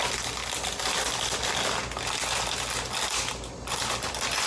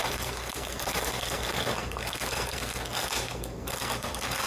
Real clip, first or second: first